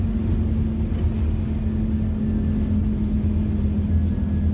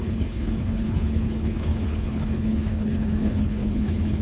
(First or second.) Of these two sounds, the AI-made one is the second